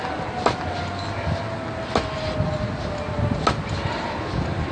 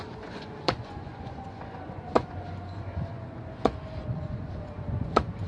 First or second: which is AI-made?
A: second